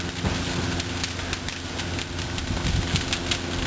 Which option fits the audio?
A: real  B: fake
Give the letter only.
A